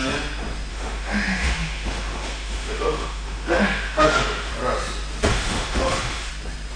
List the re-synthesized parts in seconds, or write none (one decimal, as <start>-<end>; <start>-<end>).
0.7-4.5; 5.3-6.3